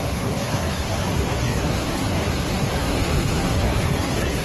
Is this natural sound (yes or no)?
no